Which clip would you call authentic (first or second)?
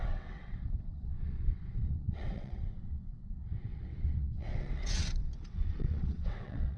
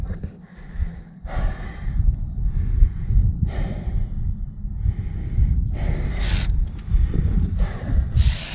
second